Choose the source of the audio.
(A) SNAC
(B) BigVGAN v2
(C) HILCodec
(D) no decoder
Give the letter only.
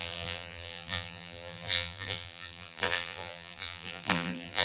B